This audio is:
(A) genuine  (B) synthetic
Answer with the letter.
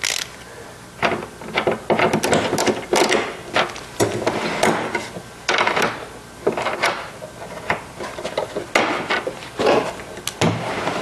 A